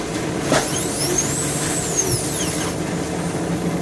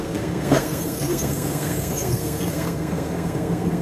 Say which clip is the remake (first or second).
second